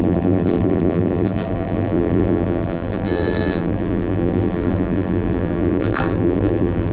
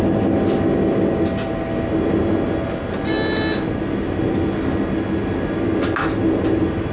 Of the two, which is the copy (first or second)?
first